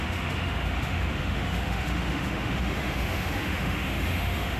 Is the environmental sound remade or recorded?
remade